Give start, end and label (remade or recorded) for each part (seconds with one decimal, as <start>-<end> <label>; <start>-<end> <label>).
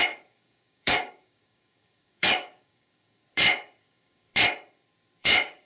0.0-3.2 remade; 3.2-3.8 recorded; 3.8-4.3 remade; 4.3-5.2 recorded; 5.2-5.7 remade